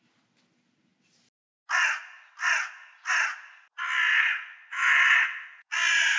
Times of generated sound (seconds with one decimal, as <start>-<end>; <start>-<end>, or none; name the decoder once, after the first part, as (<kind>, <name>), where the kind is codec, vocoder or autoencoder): 4.1-5.7 (vocoder, WaveNeXt)